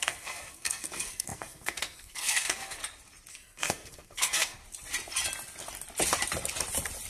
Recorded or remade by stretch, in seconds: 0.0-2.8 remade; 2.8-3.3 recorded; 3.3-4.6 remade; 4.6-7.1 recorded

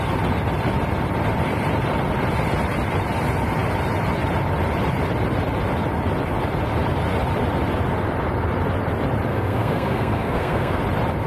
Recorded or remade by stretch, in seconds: 0.0-9.3 recorded; 9.3-10.8 remade; 10.8-11.3 recorded

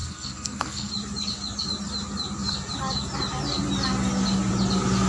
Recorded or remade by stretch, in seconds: 0.0-0.9 remade; 0.9-5.1 recorded

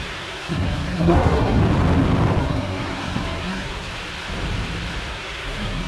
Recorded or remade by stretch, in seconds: 0.0-1.6 remade; 1.6-2.4 recorded; 2.4-3.9 remade; 3.9-5.1 recorded; 5.1-5.9 remade

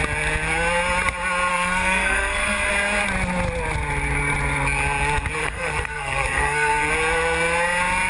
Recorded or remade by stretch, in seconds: 0.0-1.5 recorded; 1.5-2.7 remade; 2.7-5.4 recorded; 5.4-6.9 remade; 6.9-8.1 recorded

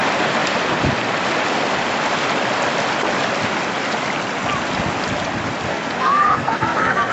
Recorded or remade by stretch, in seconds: 0.0-5.7 recorded; 5.7-7.1 remade

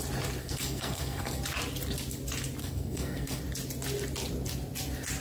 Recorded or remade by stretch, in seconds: 0.0-0.4 recorded; 0.4-1.4 remade; 1.4-2.6 recorded; 2.6-3.4 remade; 3.4-5.2 recorded